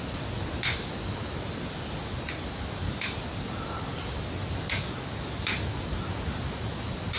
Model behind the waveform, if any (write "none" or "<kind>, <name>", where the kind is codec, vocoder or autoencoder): none